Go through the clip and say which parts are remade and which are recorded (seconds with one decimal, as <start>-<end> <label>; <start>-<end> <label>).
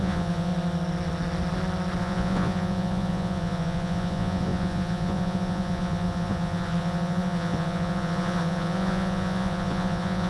0.0-0.5 remade; 0.5-2.0 recorded; 2.0-10.3 remade